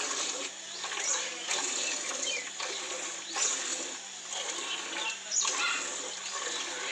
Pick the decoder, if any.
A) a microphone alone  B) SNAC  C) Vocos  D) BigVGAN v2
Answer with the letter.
A